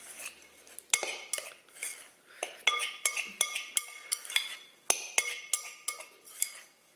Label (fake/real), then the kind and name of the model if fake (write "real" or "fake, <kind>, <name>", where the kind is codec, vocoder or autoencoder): real